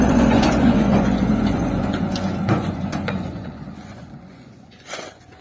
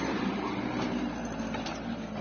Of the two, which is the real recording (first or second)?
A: second